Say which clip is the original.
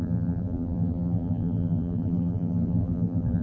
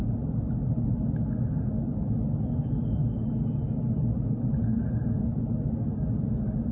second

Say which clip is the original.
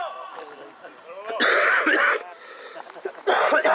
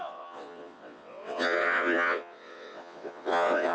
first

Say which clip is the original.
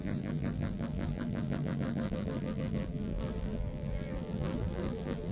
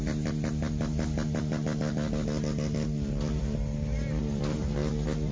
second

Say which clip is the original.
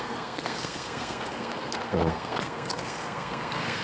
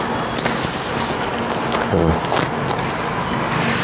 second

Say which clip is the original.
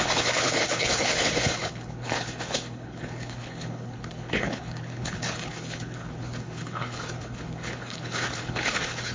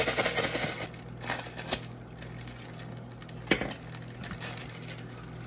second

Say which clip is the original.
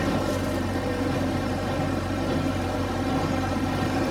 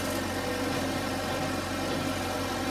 second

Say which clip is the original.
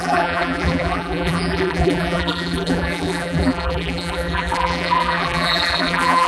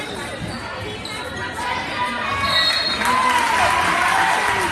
second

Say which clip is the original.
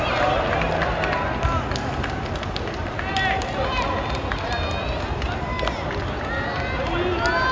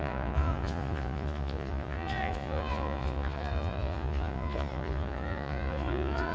first